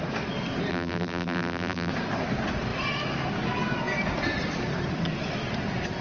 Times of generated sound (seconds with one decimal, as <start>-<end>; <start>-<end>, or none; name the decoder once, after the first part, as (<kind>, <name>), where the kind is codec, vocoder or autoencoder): 0.7-1.9 (vocoder, BigVGAN v2)